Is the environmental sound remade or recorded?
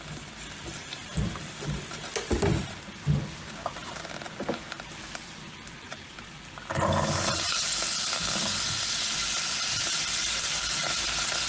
recorded